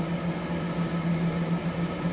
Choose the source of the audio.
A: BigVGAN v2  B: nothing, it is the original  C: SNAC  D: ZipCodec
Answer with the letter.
B